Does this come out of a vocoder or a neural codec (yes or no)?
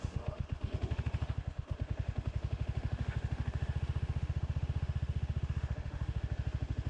yes